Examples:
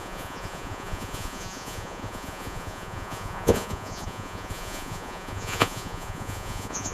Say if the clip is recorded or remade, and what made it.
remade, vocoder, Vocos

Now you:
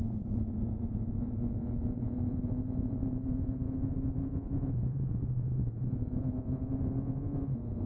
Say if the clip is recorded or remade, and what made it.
remade, vocoder, Vocos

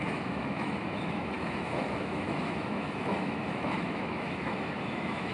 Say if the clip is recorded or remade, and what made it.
remade, autoencoder, DAC-VAE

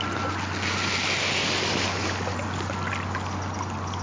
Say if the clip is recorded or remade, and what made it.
recorded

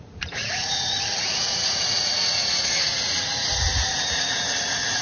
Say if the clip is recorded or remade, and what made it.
remade, vocoder, Vocos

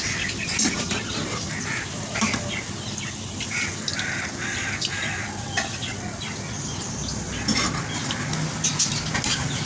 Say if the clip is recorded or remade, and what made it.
recorded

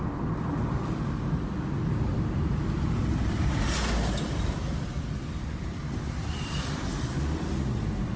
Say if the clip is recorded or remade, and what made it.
recorded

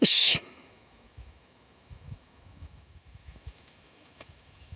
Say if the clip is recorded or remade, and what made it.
remade, autoencoder, DAC-VAE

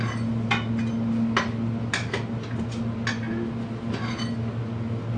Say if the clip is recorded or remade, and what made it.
recorded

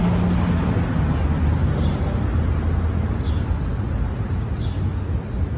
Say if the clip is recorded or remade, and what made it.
recorded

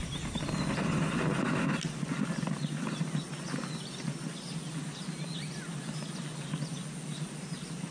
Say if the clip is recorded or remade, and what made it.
recorded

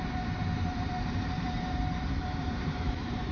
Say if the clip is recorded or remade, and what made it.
remade, vocoder, BigVGAN v2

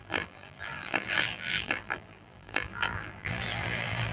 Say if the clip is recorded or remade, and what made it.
remade, vocoder, BigVGAN v2